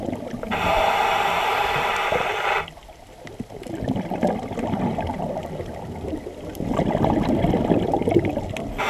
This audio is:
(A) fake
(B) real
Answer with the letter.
B